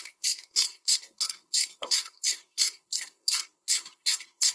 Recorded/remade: remade